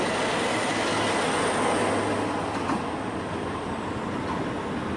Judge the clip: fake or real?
real